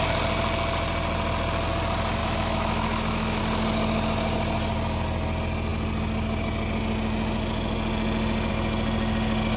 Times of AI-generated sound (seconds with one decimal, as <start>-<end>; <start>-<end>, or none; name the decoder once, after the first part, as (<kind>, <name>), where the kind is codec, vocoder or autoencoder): 2.2-3.4 (autoencoder, DAC-VAE)